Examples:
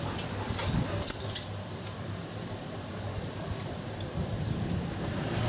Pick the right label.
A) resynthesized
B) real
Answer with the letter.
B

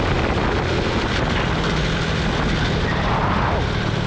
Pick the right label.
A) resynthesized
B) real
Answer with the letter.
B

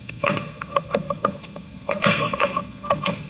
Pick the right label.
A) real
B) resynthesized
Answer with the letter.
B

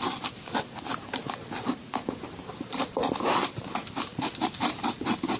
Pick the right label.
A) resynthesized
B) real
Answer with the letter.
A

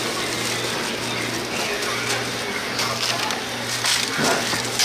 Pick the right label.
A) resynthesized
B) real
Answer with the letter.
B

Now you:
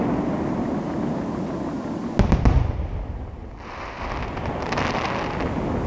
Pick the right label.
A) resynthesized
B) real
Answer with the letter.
B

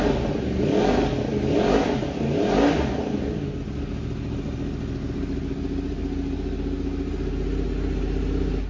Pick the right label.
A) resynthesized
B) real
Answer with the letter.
B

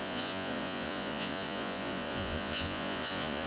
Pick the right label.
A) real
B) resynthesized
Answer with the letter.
B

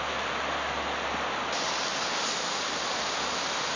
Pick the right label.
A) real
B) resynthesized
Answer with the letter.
A